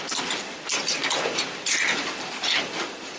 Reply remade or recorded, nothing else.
recorded